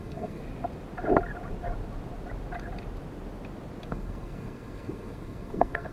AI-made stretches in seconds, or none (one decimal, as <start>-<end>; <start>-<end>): 0.0-0.4; 3.9-5.9